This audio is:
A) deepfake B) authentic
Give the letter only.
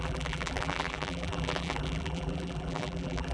A